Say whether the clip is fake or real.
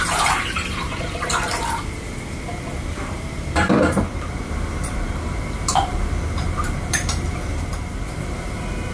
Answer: fake